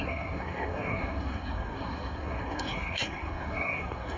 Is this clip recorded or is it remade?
remade